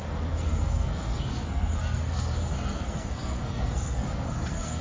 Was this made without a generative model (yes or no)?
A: no